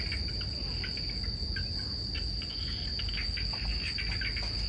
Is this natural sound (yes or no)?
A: yes